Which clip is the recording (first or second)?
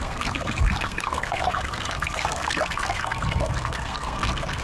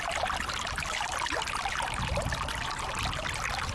second